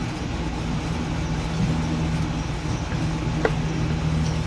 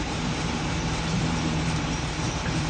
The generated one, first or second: second